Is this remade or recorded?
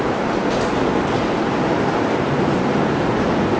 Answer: recorded